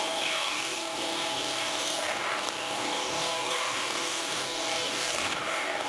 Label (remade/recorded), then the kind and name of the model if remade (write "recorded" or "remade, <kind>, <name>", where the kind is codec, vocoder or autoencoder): remade, codec, DAC